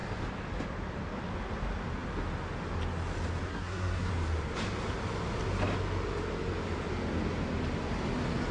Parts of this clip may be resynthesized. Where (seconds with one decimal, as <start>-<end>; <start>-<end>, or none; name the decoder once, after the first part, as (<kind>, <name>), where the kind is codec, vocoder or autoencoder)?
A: 3.5-4.1 (codec, SNAC)